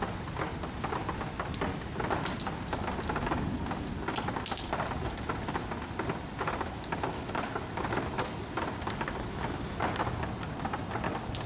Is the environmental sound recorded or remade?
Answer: recorded